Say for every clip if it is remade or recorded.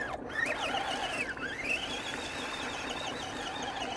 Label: recorded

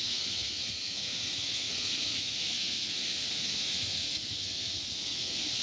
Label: remade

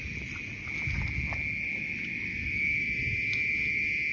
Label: recorded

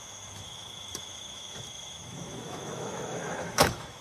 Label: remade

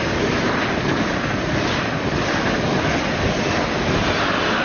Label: recorded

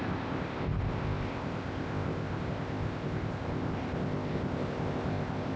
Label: remade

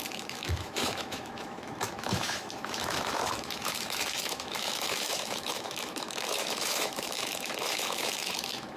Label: remade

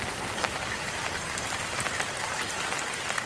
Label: recorded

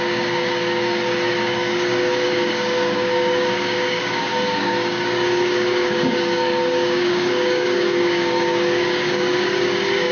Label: remade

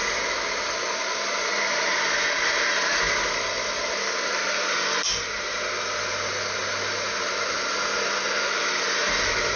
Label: recorded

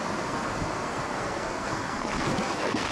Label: remade